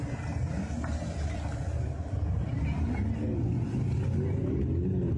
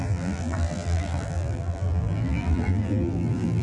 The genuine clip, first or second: first